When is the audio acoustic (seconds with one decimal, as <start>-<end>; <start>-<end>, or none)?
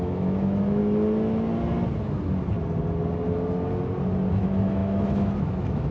0.8-4.3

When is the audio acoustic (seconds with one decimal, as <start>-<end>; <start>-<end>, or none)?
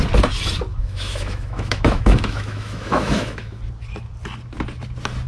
0.0-0.7; 3.6-5.3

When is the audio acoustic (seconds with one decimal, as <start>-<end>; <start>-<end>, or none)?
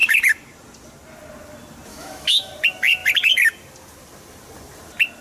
0.0-1.9; 2.5-5.2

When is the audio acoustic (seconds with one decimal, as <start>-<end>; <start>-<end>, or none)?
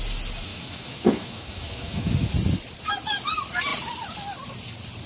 0.0-0.5; 2.1-5.1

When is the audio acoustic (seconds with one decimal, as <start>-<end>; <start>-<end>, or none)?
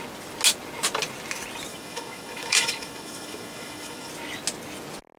0.0-1.7; 4.1-5.2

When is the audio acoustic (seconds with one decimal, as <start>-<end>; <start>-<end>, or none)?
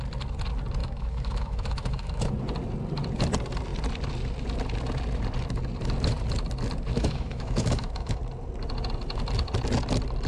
0.0-0.8; 2.3-7.0; 8.2-10.3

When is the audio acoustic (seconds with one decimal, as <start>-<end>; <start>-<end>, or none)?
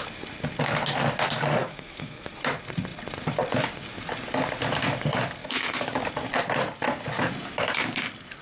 0.0-1.6; 2.3-5.4; 6.1-8.4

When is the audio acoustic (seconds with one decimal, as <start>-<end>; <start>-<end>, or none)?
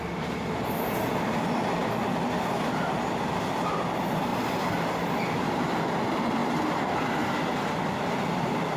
0.0-8.8